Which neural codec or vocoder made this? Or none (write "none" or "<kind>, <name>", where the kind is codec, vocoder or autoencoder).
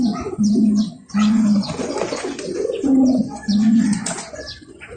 vocoder, Vocos